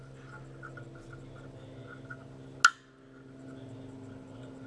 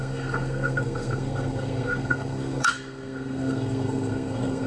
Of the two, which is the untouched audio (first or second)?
first